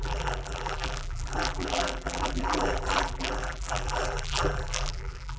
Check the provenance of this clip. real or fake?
fake